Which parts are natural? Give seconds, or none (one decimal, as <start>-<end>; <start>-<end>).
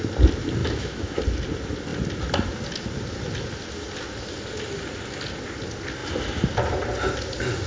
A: 0.0-0.6; 1.2-7.7